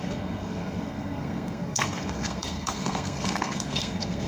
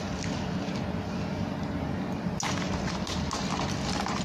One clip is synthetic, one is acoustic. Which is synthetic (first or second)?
first